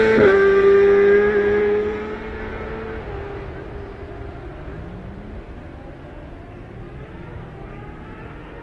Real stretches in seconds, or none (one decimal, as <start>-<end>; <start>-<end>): 0.0-1.6; 2.4-8.6